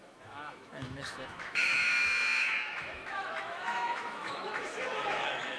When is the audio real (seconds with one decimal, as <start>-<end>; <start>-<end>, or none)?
none